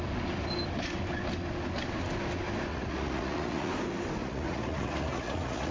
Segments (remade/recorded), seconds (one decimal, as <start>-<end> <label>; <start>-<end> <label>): 0.0-2.7 recorded; 2.7-3.7 remade; 3.7-4.2 recorded; 4.2-5.7 remade